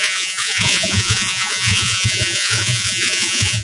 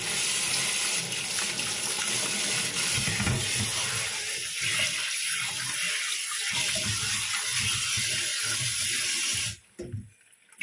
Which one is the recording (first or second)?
second